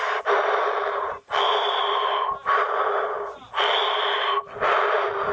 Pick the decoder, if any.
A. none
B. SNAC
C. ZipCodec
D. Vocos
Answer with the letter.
A